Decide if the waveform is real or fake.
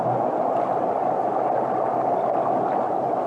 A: real